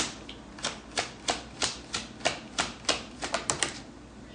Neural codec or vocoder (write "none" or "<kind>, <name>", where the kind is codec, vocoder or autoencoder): none